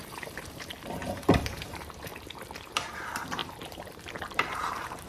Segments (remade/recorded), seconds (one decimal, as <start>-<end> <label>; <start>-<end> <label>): 0.0-5.1 remade